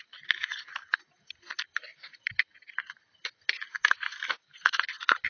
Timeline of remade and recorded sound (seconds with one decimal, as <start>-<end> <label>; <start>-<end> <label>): 0.0-5.3 recorded